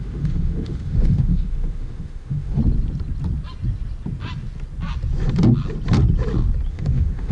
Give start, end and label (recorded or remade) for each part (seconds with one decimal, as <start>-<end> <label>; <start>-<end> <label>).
0.0-2.6 remade; 2.6-6.7 recorded; 6.7-7.3 remade